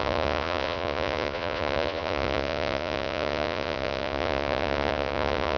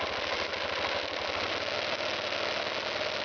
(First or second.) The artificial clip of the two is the first